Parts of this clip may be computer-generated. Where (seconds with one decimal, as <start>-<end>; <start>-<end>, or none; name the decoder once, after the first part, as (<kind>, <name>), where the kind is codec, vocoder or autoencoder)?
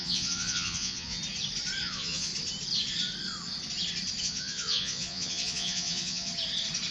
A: 0.0-1.2 (vocoder, Vocos); 1.8-2.3; 4.2-6.3